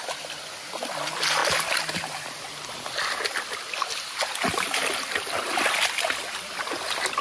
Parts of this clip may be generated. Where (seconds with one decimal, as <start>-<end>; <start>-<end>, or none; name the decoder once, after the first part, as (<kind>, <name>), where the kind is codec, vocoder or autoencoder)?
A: none